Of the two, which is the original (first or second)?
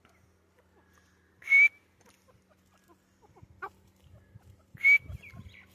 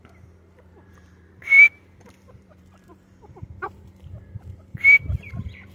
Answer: first